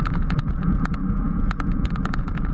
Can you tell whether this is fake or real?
fake